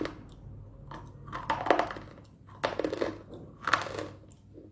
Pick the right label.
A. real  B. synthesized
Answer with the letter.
A